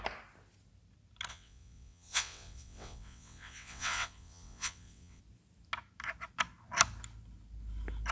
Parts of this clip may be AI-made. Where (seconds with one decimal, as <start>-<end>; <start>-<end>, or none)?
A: 1.3-5.2